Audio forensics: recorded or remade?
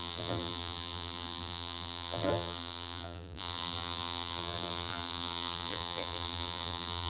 remade